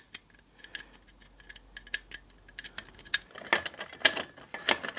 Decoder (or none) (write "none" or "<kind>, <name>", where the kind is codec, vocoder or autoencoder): none